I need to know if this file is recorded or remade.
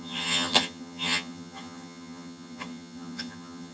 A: remade